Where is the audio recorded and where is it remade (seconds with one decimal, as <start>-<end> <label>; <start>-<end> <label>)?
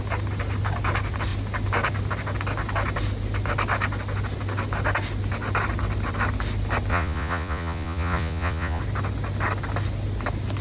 0.0-6.9 recorded; 6.9-8.8 remade; 8.8-10.6 recorded